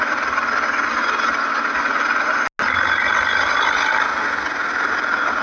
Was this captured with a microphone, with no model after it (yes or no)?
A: yes